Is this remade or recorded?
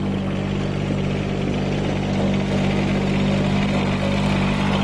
recorded